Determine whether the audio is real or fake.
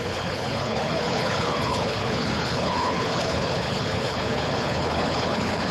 fake